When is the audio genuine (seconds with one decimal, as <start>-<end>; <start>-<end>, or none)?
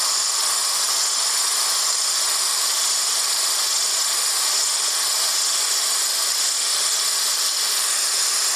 0.0-0.6; 3.0-3.8; 6.7-8.6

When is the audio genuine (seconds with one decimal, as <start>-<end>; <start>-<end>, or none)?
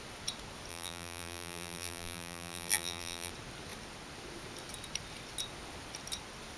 0.0-0.7; 3.3-6.6